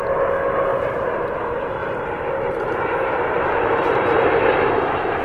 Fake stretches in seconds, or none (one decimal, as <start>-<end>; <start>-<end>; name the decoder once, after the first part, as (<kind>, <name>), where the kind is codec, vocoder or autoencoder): 0.7-1.3 (vocoder, BigVGAN v2); 1.8-5.2